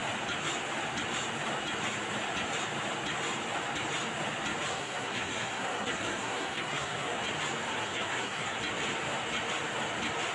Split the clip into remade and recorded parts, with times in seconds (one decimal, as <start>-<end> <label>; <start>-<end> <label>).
0.0-4.7 recorded; 4.7-7.2 remade; 7.2-7.7 recorded; 7.7-8.6 remade; 8.6-10.3 recorded